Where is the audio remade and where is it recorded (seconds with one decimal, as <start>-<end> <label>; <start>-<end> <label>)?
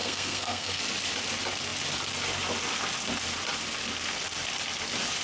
0.0-0.8 remade; 0.8-5.2 recorded